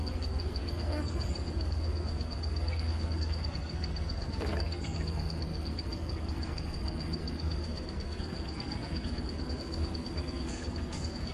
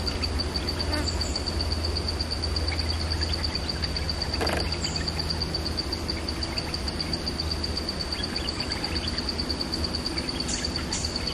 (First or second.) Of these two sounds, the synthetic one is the first